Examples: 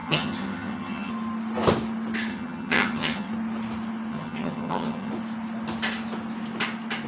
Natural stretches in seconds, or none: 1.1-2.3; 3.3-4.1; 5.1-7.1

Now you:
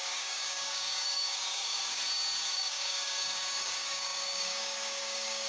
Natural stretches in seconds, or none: 2.0-2.5

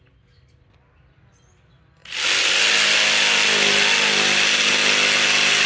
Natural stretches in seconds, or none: 0.0-5.7

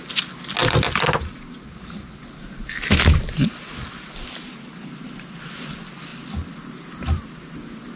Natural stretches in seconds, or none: 0.0-8.0

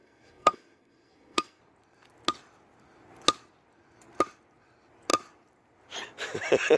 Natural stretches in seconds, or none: 1.6-6.8

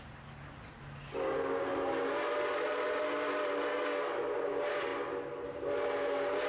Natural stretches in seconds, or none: 0.0-3.7; 4.4-6.5

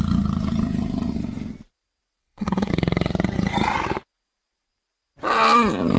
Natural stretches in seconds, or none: 0.0-2.2; 2.7-6.0